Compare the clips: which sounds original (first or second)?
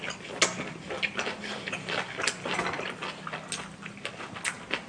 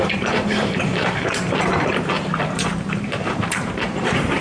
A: first